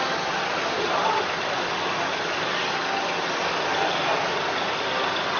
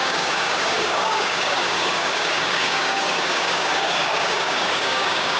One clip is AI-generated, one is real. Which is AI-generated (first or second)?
second